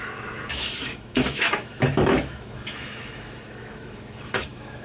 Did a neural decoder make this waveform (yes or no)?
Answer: yes